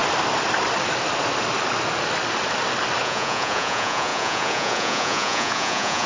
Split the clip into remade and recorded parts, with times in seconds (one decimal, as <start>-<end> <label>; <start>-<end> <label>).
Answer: 0.0-3.0 recorded; 3.0-6.1 remade